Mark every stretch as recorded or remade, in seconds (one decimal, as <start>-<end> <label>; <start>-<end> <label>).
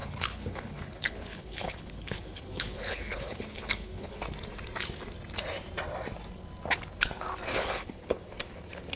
0.0-4.2 remade; 4.2-7.5 recorded; 7.5-8.3 remade; 8.3-9.0 recorded